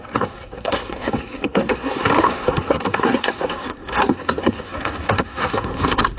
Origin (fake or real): fake